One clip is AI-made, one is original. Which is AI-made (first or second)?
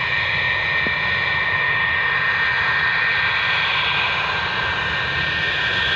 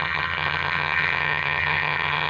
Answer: second